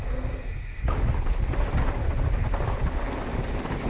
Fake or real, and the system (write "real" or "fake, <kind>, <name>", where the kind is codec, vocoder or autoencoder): real